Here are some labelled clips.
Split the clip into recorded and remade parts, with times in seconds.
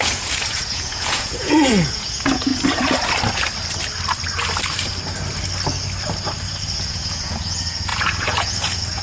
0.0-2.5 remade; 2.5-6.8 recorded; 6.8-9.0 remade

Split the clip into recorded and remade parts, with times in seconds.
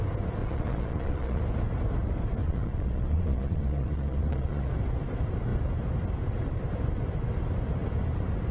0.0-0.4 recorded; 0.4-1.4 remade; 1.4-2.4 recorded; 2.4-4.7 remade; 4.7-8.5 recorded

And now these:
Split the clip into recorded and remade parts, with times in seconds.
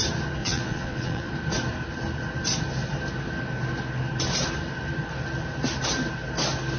0.0-0.4 recorded; 0.4-1.3 remade; 1.3-6.8 recorded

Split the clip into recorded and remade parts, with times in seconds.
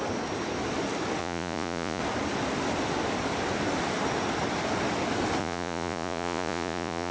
0.0-1.2 recorded; 1.2-2.0 remade; 2.0-5.4 recorded; 5.4-7.1 remade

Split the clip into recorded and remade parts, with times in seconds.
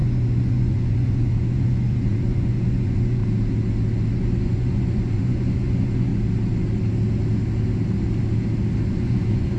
0.0-3.2 remade; 3.2-4.1 recorded; 4.1-6.1 remade; 6.1-8.8 recorded; 8.8-9.6 remade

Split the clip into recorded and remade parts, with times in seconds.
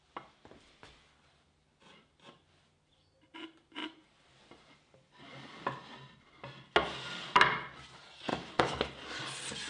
0.0-9.7 recorded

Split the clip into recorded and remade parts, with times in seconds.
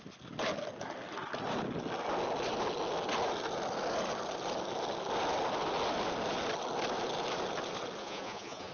0.0-8.0 recorded; 8.0-8.7 remade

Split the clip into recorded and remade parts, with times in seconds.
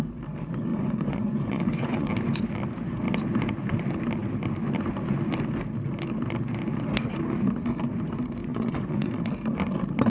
0.0-0.7 recorded; 0.7-2.1 remade; 2.1-8.4 recorded; 8.4-9.2 remade; 9.2-10.1 recorded